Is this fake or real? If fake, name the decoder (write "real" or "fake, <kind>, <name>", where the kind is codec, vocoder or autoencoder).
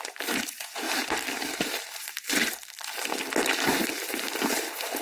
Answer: fake, vocoder, BigVGAN v2